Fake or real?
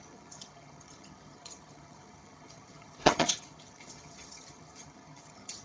fake